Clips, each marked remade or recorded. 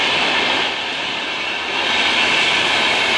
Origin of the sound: recorded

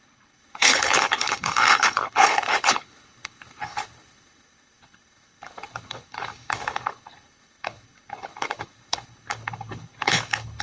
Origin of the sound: remade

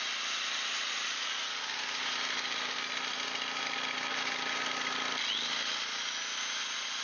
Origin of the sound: recorded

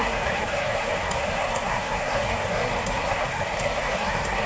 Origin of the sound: remade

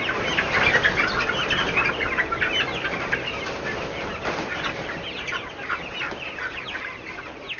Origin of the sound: recorded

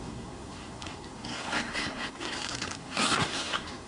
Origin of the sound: remade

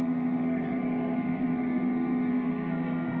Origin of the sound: remade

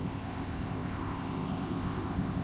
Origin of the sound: remade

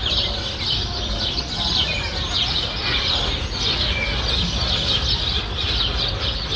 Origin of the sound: recorded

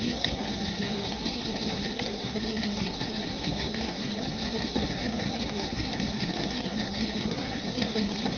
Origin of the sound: remade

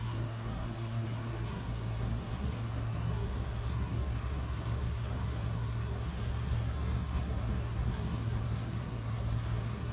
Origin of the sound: remade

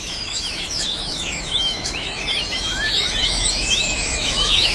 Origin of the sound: remade